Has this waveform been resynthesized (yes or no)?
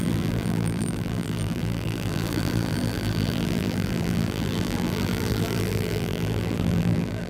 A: yes